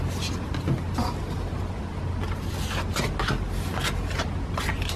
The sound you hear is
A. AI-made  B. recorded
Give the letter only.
B